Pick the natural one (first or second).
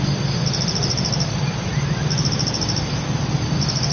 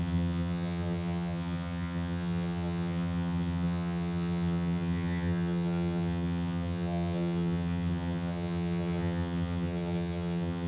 first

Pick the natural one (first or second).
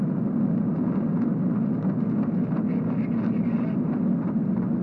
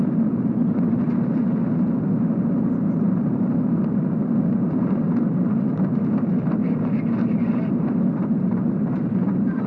first